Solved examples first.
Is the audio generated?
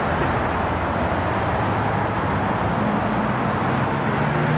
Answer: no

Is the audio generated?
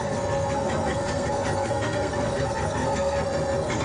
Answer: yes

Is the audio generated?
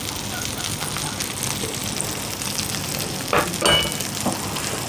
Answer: no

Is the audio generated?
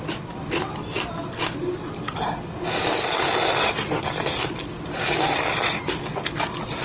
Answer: no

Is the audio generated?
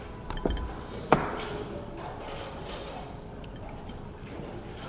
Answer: no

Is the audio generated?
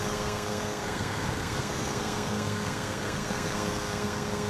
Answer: yes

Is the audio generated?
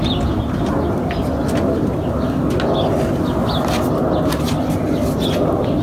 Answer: no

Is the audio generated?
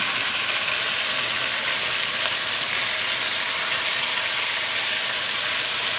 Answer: yes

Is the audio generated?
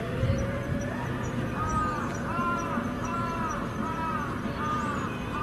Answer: yes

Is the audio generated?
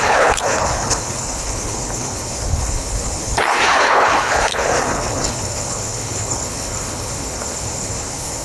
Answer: yes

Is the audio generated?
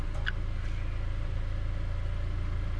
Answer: no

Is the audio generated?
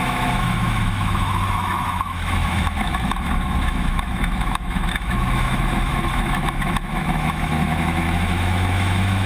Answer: yes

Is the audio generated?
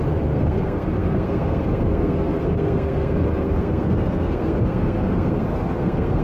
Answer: yes